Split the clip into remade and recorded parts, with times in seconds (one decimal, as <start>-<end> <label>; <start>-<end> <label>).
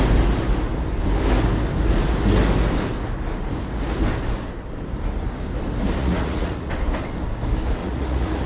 0.0-6.0 recorded; 6.0-6.7 remade; 6.7-7.8 recorded; 7.8-8.5 remade